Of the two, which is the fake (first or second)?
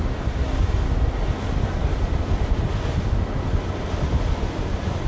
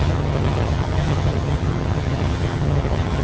second